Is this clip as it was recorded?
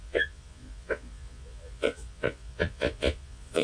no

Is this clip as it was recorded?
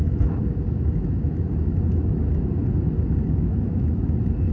no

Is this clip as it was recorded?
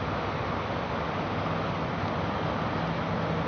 yes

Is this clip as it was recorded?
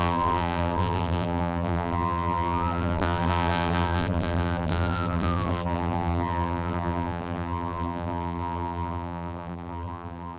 no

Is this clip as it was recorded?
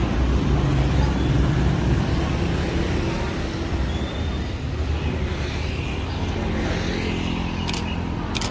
yes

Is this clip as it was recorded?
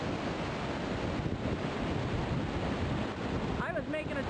yes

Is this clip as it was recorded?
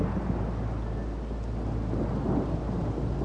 yes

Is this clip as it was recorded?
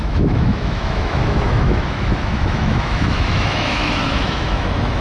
no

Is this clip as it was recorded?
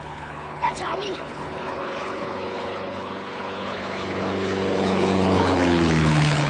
no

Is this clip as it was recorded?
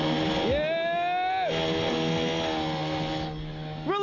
yes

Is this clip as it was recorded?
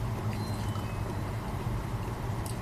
yes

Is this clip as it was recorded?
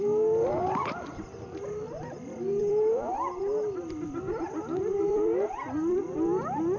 no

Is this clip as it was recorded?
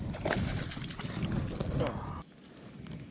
yes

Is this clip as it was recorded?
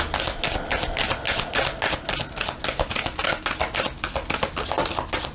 yes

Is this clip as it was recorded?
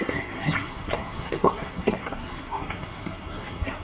no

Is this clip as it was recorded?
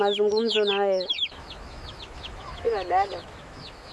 no